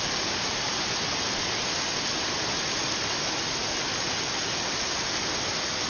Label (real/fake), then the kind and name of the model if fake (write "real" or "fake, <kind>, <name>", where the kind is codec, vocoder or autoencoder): real